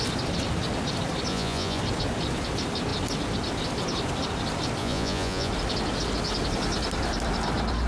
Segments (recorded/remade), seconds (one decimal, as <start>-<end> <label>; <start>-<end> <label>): 0.0-1.3 recorded; 1.3-1.8 remade; 1.8-4.8 recorded; 4.8-5.5 remade; 5.5-7.9 recorded